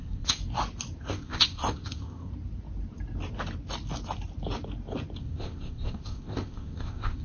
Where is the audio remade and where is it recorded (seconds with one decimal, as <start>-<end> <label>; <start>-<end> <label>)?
0.0-0.4 remade; 0.4-1.0 recorded; 1.0-2.3 remade; 2.3-5.2 recorded; 5.2-7.2 remade